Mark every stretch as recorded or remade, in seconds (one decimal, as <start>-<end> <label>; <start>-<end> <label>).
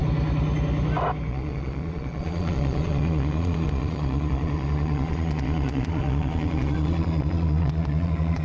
0.0-1.3 recorded; 1.3-8.4 remade